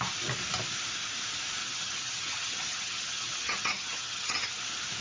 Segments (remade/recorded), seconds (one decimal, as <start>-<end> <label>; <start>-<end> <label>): 0.0-1.6 recorded; 1.6-4.6 remade; 4.6-5.0 recorded

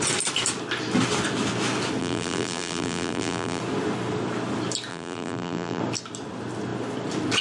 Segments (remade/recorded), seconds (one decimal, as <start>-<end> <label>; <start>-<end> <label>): 0.0-2.0 recorded; 2.0-3.6 remade; 3.6-4.9 recorded; 4.9-5.8 remade; 5.8-7.4 recorded

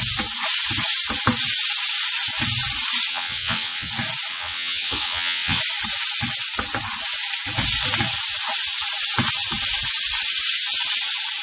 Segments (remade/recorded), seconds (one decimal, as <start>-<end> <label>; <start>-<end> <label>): 0.0-3.1 recorded; 3.1-3.9 remade; 3.9-4.3 recorded; 4.3-5.6 remade; 5.6-11.4 recorded

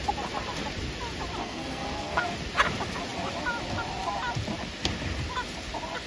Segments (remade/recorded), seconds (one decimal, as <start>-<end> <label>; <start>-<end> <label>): 0.0-1.4 recorded; 1.4-2.2 remade; 2.2-6.1 recorded

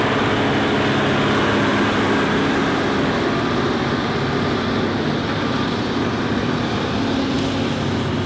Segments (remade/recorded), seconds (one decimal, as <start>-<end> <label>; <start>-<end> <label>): 0.0-8.3 recorded

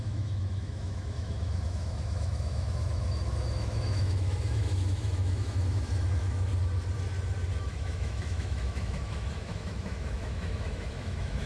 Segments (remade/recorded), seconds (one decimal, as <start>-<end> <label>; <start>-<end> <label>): 0.0-6.5 remade; 6.5-7.6 recorded; 7.6-11.5 remade

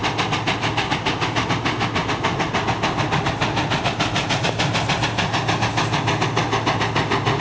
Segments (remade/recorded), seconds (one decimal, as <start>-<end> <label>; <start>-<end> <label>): 0.0-7.4 recorded